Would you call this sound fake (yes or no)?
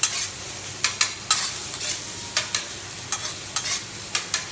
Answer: no